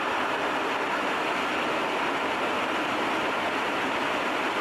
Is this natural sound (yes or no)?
no